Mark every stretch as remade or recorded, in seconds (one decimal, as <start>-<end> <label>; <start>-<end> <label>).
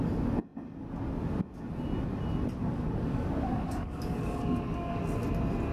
0.0-2.6 recorded; 2.6-5.0 remade; 5.0-5.7 recorded